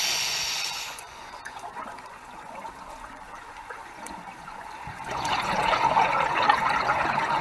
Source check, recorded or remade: remade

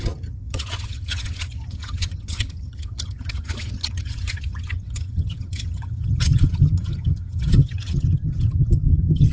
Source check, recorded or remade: remade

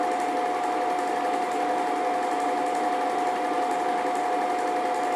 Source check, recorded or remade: recorded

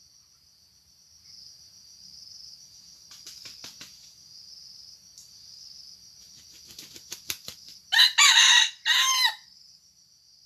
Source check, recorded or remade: recorded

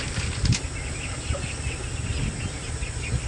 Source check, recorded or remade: recorded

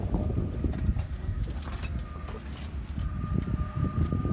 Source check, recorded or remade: recorded